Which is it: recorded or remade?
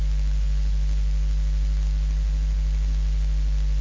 recorded